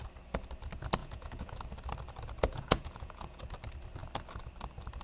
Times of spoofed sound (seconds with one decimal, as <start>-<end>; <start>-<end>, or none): 1.0-1.6; 2.5-3.4